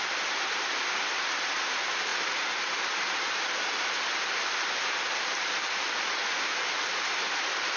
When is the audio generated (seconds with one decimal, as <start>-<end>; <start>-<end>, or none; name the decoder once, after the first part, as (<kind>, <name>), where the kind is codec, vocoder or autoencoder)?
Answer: 2.1-4.8 (vocoder, BigVGAN v2); 6.2-7.1